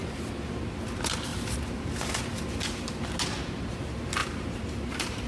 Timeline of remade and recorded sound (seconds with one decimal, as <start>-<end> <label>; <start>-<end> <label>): 0.0-4.2 recorded; 4.2-5.3 remade